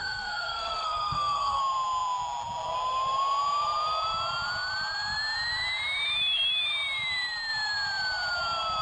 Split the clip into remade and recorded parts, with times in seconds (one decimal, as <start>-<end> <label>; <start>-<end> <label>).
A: 0.0-1.6 remade; 1.6-8.8 recorded